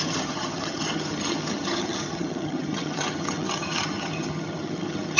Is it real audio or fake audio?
fake